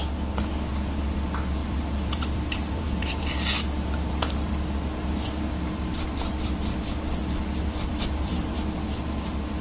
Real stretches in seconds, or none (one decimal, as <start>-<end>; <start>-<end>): 0.0-1.6; 3.2-7.9; 8.6-9.6